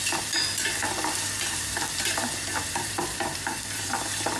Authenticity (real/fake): fake